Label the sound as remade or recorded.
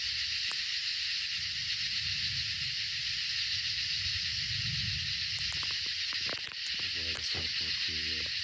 recorded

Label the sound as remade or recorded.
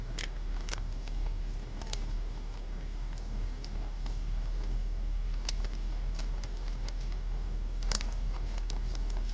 remade